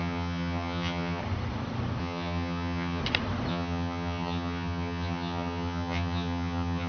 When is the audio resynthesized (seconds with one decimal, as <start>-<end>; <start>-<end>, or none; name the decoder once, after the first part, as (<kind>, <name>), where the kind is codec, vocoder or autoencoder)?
0.0-1.2 (vocoder, HiFi-GAN); 2.0-3.0; 3.5-6.9